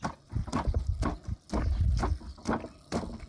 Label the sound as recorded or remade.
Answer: recorded